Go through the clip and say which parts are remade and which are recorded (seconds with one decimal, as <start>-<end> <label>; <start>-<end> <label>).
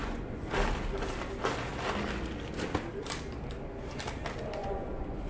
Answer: 0.0-0.5 remade; 0.5-4.6 recorded; 4.6-5.3 remade